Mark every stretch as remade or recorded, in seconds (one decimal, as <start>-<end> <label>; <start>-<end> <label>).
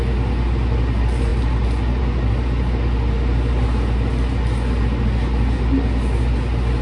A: 0.0-6.8 recorded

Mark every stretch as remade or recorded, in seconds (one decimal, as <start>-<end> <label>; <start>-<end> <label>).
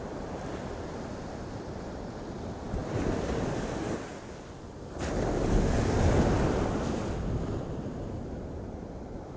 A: 0.0-2.8 recorded; 2.8-3.3 remade; 3.3-4.1 recorded; 4.1-5.3 remade; 5.3-9.4 recorded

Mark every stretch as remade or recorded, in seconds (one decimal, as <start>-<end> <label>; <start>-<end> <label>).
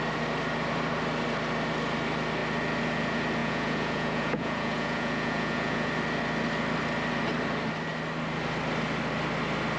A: 0.0-3.4 recorded; 3.4-5.9 remade; 5.9-9.8 recorded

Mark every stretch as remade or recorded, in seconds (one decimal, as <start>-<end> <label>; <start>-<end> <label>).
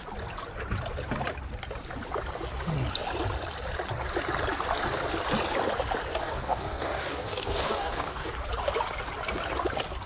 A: 0.0-6.1 recorded; 6.1-8.3 remade; 8.3-10.1 recorded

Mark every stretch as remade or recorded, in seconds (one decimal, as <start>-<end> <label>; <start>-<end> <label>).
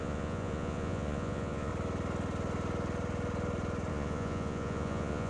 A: 0.0-1.7 remade; 1.7-3.9 recorded; 3.9-5.3 remade